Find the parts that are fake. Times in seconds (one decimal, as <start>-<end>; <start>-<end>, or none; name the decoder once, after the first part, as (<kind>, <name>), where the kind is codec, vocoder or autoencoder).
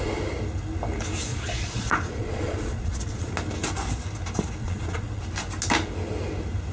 1.3-3.3 (vocoder, Vocos); 4.6-5.2